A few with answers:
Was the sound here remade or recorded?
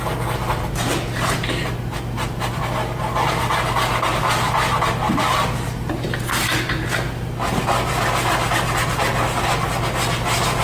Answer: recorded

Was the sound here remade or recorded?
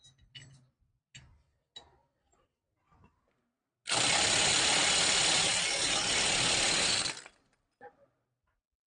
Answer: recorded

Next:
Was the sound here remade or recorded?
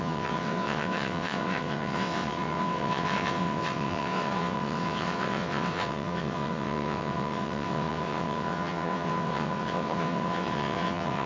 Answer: remade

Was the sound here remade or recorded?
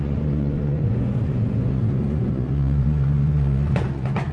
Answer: remade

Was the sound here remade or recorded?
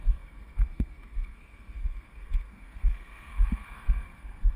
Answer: remade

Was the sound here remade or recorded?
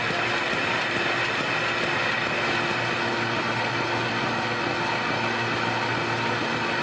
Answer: recorded